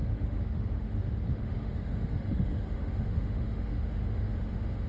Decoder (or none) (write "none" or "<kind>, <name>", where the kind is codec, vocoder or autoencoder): autoencoder, DAC-VAE